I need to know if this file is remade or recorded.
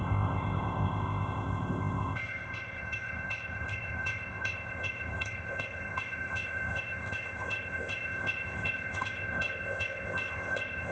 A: remade